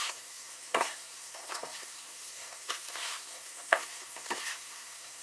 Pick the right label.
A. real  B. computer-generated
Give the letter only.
B